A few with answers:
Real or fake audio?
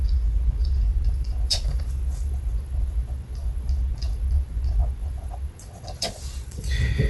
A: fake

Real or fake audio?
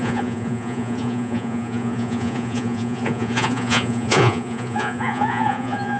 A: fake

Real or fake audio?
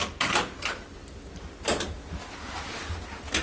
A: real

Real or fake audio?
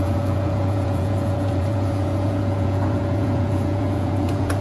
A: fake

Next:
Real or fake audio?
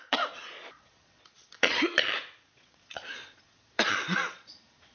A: fake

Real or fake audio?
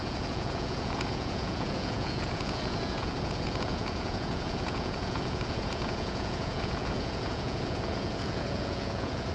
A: fake